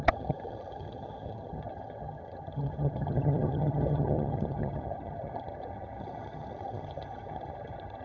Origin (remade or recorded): remade